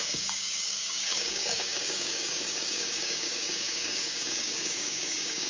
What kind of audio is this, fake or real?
fake